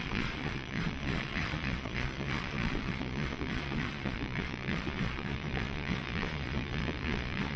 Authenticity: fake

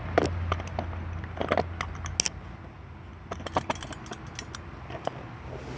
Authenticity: real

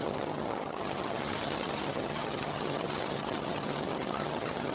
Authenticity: fake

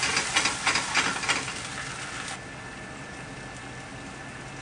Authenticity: real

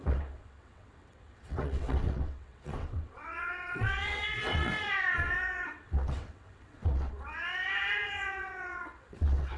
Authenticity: fake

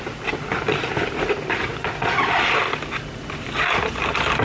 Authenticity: real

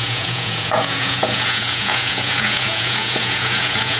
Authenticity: fake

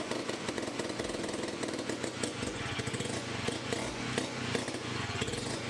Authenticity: fake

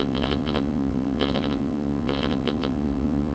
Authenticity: fake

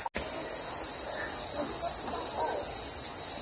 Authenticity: real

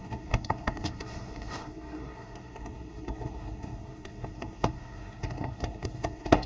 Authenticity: fake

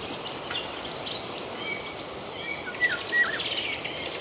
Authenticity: real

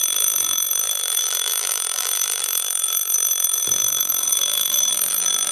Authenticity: fake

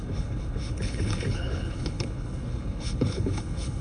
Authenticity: fake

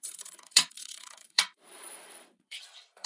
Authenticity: fake